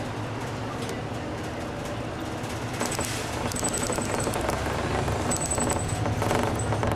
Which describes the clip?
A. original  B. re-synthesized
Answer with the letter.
A